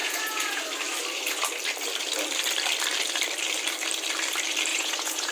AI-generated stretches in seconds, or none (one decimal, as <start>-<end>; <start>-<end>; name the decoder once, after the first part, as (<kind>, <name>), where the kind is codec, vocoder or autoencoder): 0.0-0.6 (vocoder, Vocos); 4.7-5.3